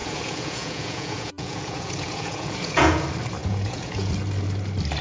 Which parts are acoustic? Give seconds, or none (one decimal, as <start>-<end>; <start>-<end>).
3.0-3.4; 4.1-5.0